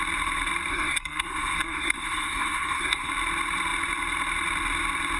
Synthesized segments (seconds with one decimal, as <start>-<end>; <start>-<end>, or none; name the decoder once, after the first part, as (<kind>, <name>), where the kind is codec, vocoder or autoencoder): 0.7-3.1 (codec, SNAC)